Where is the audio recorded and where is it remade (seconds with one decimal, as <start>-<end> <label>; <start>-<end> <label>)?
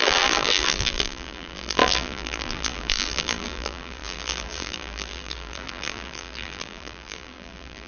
0.0-7.9 remade